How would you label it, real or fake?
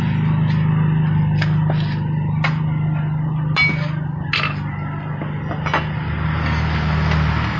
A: real